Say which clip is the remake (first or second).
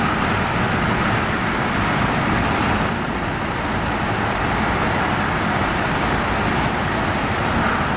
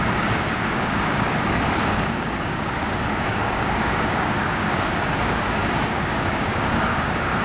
second